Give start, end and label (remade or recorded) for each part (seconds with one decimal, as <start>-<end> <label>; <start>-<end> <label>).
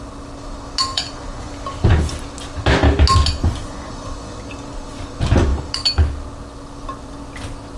0.0-0.9 recorded; 0.9-1.5 remade; 1.5-3.4 recorded; 3.4-4.4 remade; 4.4-7.8 recorded